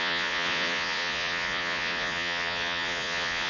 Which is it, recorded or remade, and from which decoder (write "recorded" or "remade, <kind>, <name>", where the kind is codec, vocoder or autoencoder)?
remade, vocoder, Vocos